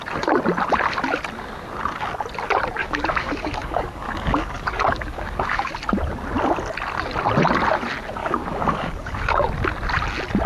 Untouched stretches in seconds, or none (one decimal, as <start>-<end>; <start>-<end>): 0.0-2.8; 5.7-8.2; 9.5-10.5